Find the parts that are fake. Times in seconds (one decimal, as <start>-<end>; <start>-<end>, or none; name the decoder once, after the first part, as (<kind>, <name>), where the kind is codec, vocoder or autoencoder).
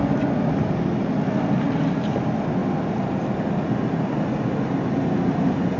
none